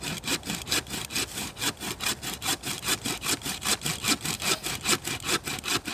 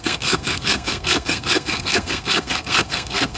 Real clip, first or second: first